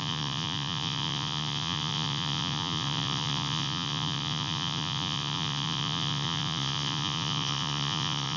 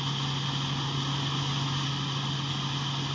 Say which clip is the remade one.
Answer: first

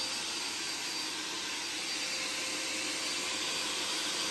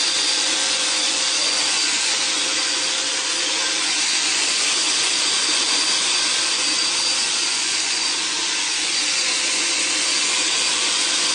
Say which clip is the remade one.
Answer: second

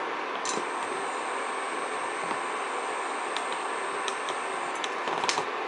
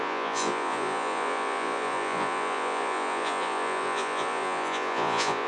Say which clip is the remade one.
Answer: second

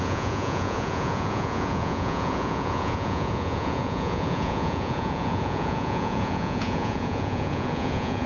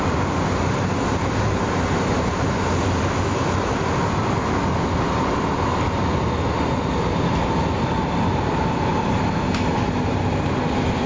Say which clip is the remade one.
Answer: first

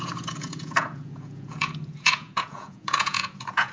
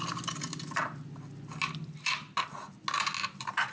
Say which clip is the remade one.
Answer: first